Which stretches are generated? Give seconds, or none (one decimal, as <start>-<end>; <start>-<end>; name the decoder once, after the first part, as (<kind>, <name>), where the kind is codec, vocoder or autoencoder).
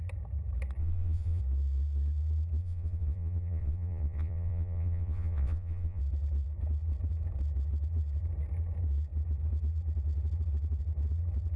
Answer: 0.8-1.4 (vocoder, Vocos); 2.6-6.0